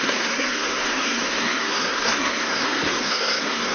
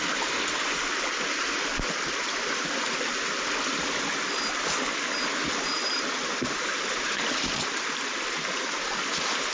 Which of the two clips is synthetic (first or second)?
first